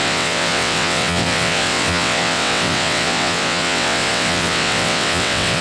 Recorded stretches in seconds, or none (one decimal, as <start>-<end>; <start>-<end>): none